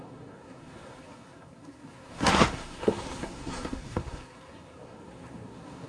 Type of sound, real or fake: fake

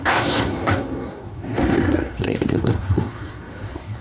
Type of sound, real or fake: fake